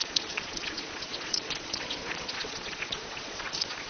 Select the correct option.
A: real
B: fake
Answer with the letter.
B